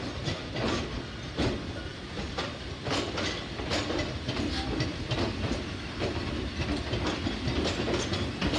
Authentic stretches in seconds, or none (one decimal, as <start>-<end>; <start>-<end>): 0.0-1.9; 6.6-8.6